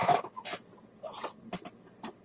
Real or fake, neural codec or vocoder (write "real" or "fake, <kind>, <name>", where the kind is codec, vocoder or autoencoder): real